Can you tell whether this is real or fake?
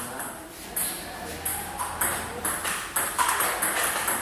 real